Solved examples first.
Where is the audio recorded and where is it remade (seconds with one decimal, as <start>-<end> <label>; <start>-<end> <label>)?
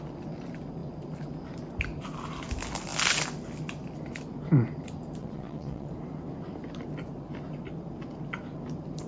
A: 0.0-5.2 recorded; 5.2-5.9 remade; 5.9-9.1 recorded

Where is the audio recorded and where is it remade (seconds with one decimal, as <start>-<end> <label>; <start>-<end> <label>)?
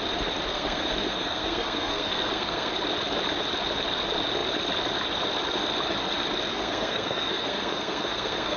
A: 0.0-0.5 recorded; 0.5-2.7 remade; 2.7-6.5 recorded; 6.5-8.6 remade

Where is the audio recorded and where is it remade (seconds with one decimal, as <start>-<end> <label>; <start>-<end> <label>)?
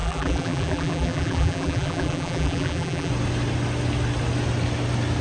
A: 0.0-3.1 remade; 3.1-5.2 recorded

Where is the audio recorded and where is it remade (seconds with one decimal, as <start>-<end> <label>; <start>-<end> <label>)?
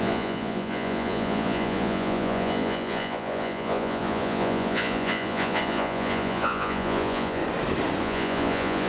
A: 0.0-7.4 remade; 7.4-8.0 recorded; 8.0-8.9 remade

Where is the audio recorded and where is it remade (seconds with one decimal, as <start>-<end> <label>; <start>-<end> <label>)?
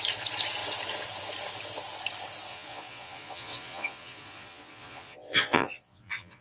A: 0.0-2.5 recorded; 2.5-6.4 remade